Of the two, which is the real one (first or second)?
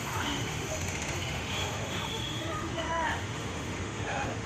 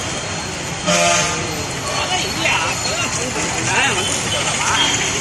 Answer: second